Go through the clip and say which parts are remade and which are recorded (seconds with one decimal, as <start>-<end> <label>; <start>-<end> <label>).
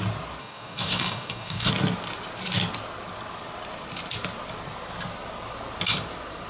0.0-0.4 recorded; 0.4-1.7 remade; 1.7-6.5 recorded